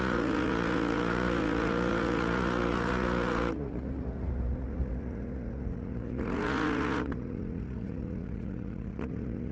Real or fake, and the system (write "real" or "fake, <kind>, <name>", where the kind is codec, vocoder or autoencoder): fake, vocoder, Vocos